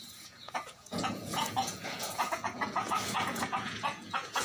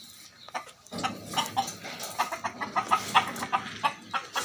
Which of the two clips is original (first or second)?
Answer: second